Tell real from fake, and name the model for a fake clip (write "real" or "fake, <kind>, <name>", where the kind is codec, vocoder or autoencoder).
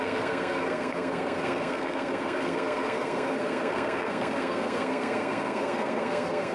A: fake, codec, SNAC